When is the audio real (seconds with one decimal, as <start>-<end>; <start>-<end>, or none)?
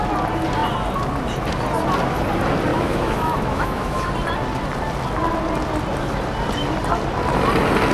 0.0-2.7; 4.1-7.9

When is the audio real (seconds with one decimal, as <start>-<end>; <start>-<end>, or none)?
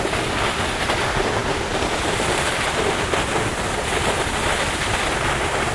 0.0-5.7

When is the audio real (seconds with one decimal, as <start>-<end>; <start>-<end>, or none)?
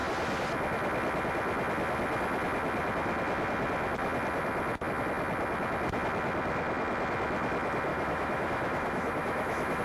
0.0-7.9